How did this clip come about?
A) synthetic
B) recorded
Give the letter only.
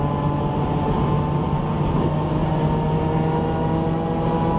B